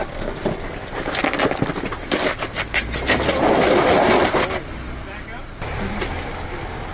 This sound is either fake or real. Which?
real